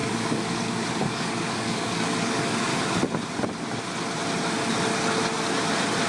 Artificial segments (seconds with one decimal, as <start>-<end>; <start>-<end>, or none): 0.0-2.7